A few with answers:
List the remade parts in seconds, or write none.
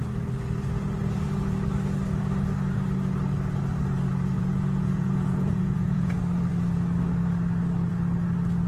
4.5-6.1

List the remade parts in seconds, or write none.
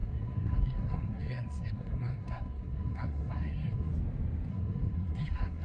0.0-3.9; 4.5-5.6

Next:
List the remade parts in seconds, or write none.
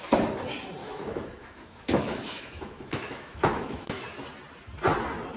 0.8-4.0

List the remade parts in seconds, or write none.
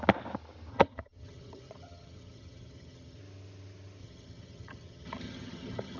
0.7-3.2; 4.0-6.0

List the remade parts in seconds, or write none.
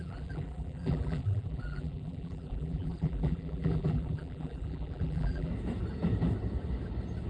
0.0-5.5